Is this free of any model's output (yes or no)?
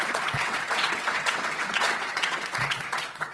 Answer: no